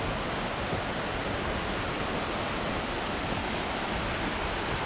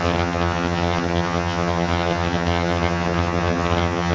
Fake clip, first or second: second